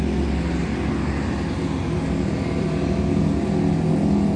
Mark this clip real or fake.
real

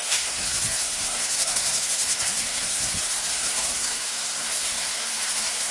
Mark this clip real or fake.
fake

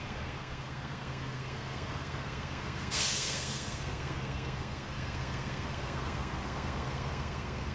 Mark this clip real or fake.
fake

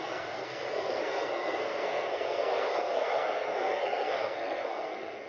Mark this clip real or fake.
fake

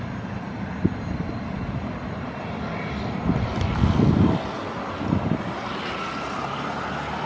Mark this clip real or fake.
real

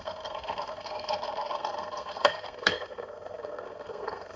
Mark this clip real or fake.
fake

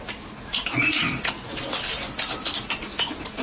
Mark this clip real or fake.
real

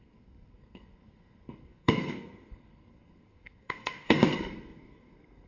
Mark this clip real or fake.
fake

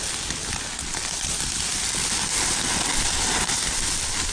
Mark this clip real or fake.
real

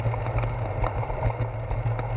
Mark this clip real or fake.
real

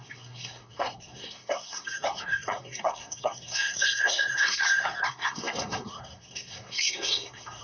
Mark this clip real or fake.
fake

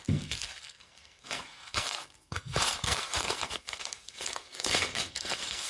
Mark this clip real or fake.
fake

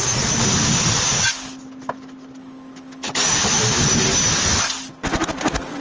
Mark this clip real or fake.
real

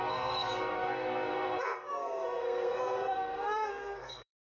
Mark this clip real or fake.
fake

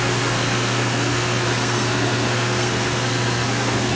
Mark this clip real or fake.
fake